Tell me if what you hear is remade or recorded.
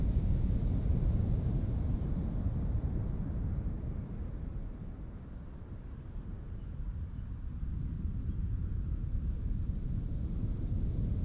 remade